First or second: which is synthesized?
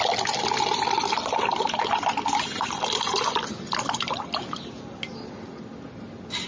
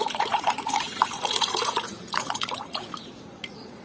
second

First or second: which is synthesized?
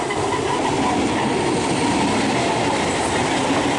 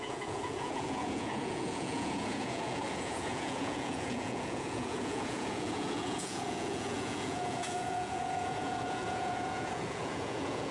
second